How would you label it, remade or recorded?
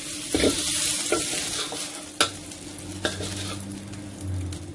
recorded